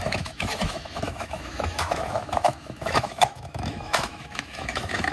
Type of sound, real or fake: fake